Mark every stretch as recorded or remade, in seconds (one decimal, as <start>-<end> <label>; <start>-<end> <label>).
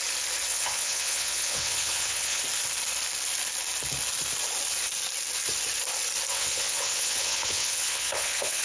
0.0-0.5 recorded; 0.5-2.4 remade; 2.4-6.3 recorded; 6.3-8.6 remade